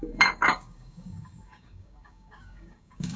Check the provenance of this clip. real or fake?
fake